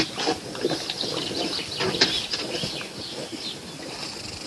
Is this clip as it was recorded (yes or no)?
yes